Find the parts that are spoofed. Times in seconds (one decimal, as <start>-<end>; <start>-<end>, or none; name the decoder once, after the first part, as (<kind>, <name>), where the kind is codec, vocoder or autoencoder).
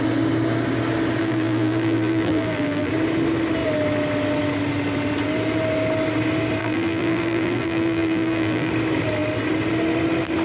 1.2-2.9 (vocoder, BigVGAN v2); 6.6-8.7